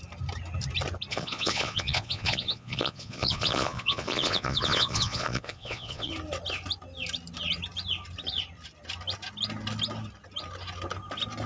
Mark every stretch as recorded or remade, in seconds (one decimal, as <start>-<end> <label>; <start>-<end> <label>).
0.0-1.1 recorded; 1.1-6.1 remade; 6.1-11.5 recorded